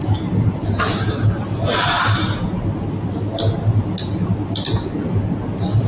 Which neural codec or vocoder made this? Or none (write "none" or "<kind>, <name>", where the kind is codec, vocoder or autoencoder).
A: none